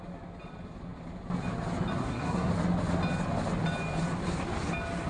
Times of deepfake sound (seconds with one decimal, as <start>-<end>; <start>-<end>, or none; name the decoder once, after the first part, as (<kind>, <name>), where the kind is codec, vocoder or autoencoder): 2.0-2.5 (codec, SNAC)